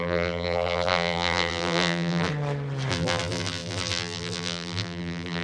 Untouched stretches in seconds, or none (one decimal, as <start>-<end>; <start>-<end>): 2.3-2.9